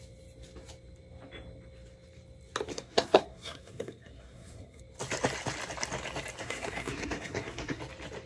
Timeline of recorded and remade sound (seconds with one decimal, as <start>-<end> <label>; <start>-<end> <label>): 0.0-2.7 recorded; 2.7-4.8 remade; 4.8-6.4 recorded; 6.4-7.8 remade; 7.8-8.3 recorded